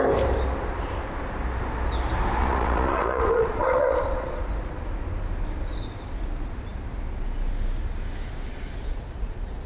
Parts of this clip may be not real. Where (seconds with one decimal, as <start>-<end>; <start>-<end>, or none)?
2.4-4.4; 8.5-9.7